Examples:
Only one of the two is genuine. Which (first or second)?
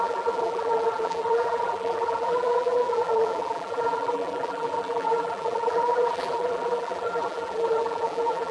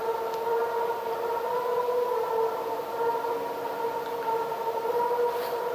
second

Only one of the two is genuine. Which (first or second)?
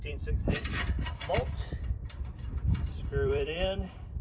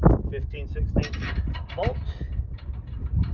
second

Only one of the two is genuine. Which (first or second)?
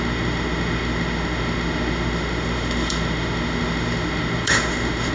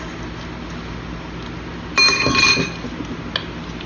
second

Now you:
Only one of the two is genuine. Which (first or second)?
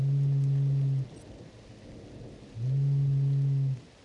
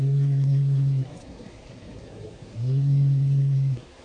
first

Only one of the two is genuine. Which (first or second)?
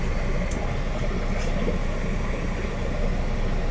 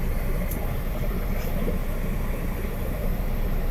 first